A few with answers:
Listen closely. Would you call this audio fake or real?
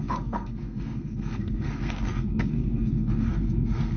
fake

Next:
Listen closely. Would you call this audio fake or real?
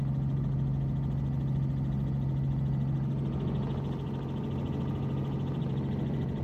real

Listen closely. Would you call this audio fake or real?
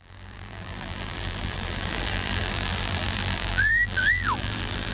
fake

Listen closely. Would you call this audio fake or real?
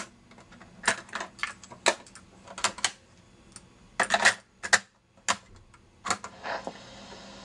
real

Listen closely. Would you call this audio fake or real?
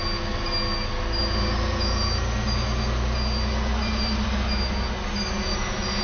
real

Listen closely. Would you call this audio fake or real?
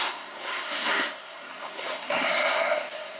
fake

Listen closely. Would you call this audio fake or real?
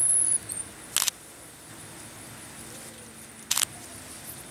real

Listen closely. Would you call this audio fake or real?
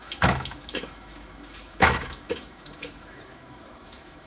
fake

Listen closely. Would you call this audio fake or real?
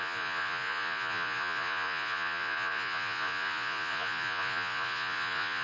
fake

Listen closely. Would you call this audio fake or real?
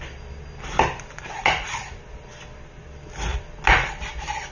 real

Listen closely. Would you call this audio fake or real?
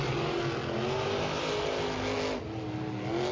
real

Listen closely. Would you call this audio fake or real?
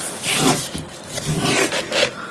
real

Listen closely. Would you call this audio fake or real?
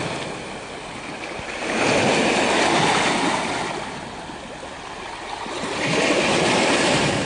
real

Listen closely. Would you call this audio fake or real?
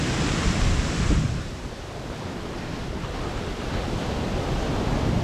real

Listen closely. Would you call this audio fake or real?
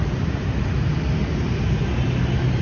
real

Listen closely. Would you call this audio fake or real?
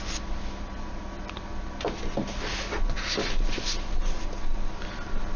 real